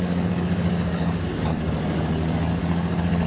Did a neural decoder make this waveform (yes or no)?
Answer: yes